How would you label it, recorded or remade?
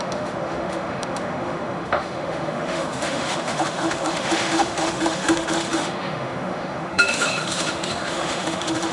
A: remade